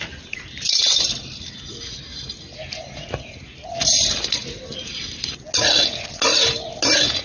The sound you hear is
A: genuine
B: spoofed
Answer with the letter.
A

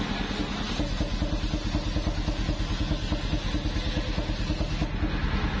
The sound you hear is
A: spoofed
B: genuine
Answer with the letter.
B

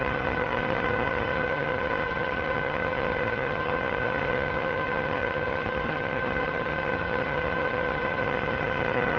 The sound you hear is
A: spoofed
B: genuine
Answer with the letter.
A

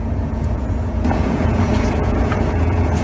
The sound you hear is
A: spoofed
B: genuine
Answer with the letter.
A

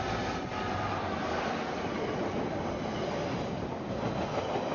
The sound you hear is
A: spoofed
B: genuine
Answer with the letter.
B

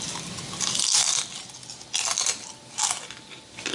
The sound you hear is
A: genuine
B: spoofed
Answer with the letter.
A